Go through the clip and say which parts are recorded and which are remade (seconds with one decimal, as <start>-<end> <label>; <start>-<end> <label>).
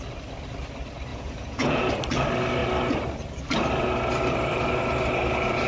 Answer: 0.0-1.1 recorded; 1.1-1.9 remade; 1.9-5.7 recorded